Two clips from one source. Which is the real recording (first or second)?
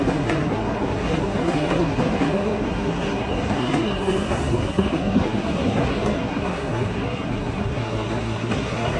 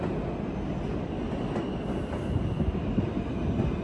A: second